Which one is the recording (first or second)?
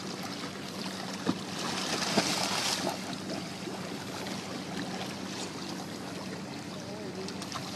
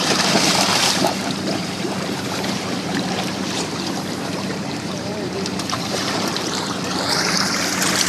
first